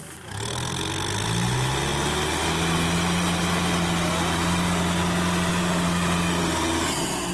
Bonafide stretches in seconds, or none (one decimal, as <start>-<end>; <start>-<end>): 0.0-7.3